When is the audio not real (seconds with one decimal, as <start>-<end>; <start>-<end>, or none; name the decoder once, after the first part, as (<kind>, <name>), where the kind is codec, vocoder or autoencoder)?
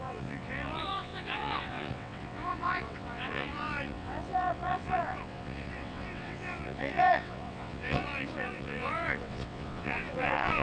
0.0-10.6 (vocoder, WaveNeXt)